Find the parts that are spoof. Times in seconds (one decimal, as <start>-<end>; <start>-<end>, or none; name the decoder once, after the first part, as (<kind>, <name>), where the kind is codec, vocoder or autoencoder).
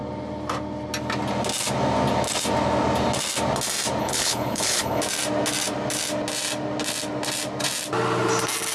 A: 4.0-5.0 (codec, HILCodec)